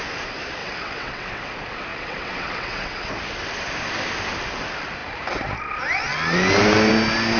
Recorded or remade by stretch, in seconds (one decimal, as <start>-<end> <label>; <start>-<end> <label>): 0.0-0.6 recorded; 0.6-1.4 remade; 1.4-1.9 recorded; 1.9-3.1 remade; 3.1-7.4 recorded